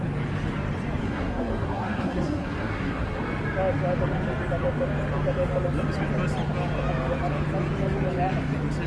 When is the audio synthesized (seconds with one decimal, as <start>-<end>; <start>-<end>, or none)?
1.0-3.2